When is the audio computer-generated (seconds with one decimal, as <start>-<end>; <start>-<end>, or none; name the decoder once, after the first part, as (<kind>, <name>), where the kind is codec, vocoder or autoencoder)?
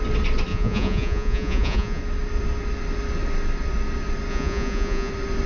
0.5-2.0 (vocoder, Vocos); 4.3-5.1